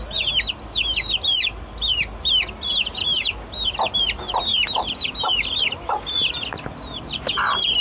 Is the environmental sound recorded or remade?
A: recorded